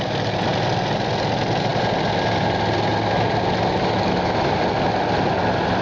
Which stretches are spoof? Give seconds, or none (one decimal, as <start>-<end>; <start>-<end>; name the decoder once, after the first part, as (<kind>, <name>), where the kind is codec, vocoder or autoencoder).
none